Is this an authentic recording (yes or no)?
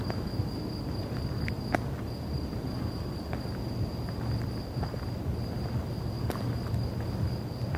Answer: yes